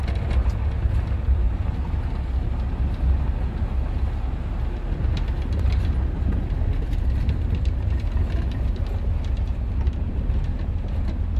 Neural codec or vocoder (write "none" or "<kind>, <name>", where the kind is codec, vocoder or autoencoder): none